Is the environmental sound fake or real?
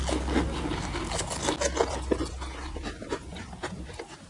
real